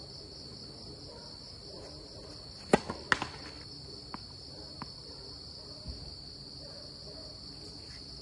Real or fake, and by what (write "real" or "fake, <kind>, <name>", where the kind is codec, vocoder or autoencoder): real